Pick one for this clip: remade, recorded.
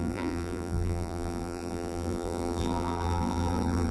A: remade